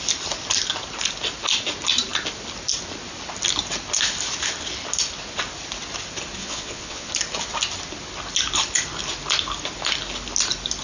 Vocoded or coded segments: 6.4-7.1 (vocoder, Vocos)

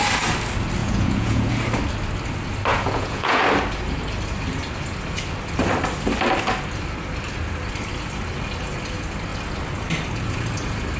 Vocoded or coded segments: 0.8-1.5 (vocoder, Vocos); 2.7-3.4